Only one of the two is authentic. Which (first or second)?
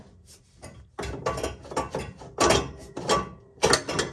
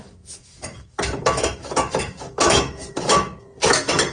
first